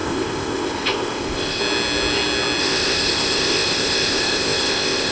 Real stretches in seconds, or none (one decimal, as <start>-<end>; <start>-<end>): 1.6-2.6